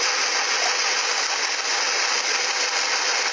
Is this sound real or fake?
real